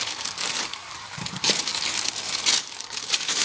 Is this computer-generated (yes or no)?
yes